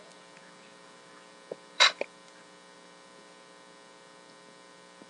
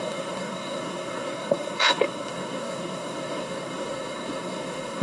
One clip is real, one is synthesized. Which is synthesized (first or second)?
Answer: second